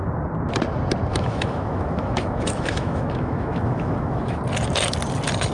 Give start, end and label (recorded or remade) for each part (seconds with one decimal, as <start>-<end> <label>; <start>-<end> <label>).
0.0-1.1 recorded; 1.1-4.4 remade; 4.4-5.5 recorded